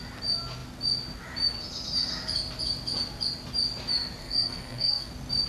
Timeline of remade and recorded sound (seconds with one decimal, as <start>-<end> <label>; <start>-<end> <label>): 0.0-4.2 recorded; 4.2-5.1 remade; 5.1-5.5 recorded